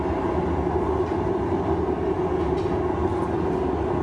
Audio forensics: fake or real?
real